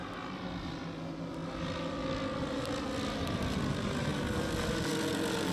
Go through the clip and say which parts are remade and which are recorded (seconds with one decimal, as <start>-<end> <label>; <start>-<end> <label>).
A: 0.0-5.5 recorded